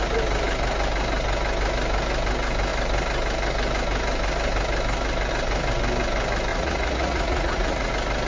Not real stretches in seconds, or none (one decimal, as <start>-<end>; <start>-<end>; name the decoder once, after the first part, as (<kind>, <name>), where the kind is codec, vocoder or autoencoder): 6.5-7.9 (vocoder, Vocos)